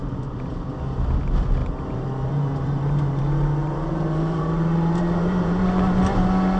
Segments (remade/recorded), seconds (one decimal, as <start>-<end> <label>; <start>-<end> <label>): 0.0-0.7 remade; 0.7-1.6 recorded; 1.6-3.2 remade; 3.2-3.6 recorded; 3.6-6.0 remade; 6.0-6.6 recorded